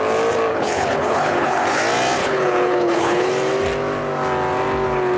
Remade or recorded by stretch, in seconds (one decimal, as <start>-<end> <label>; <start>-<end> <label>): 0.0-0.5 recorded; 0.5-1.8 remade; 1.8-2.2 recorded; 2.2-3.3 remade; 3.3-5.2 recorded